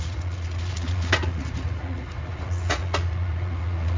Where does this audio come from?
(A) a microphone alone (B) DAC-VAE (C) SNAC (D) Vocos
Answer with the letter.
D